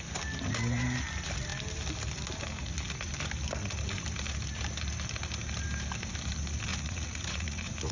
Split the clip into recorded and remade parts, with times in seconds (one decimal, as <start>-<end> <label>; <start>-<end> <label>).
0.0-6.7 recorded; 6.7-7.9 remade